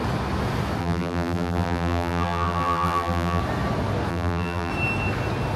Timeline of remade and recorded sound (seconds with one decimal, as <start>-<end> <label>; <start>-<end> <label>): 0.0-0.8 recorded; 0.8-3.4 remade; 3.4-4.1 recorded; 4.1-4.7 remade; 4.7-5.6 recorded